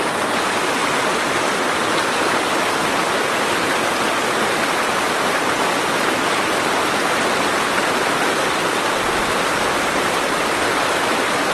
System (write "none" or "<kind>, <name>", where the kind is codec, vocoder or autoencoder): none